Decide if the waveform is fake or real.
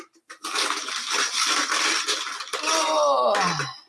real